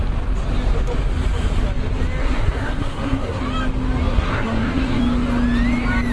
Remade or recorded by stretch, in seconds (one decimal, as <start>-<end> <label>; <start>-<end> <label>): 0.0-2.2 recorded; 2.2-3.4 remade; 3.4-4.1 recorded; 4.1-5.0 remade; 5.0-6.1 recorded